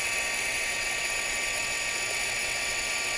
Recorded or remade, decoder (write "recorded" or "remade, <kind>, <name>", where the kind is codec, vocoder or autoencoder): remade, vocoder, WaveNeXt